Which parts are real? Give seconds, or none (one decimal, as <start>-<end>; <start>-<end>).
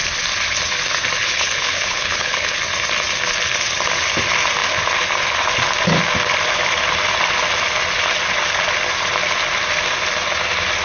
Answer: 0.0-1.2; 2.6-10.8